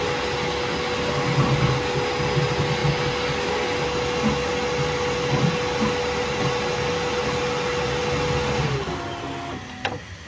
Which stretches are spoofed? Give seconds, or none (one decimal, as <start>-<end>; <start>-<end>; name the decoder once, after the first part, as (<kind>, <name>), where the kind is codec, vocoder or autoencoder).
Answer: none